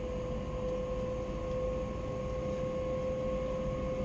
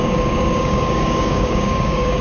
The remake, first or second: second